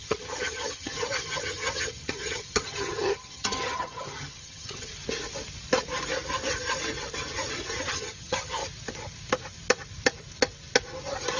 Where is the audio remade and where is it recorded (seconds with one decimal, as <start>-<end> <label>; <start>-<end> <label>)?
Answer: 0.0-4.9 remade; 4.9-7.9 recorded; 7.9-8.6 remade; 8.6-11.4 recorded